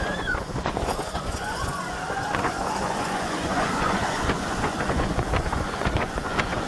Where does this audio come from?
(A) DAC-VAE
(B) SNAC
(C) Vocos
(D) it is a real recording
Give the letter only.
C